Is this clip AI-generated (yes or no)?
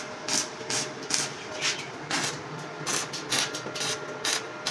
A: no